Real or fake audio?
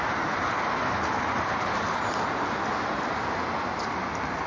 real